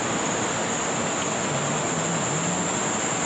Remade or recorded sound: recorded